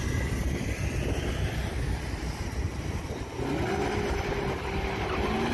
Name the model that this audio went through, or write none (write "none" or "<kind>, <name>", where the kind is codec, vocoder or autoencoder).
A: none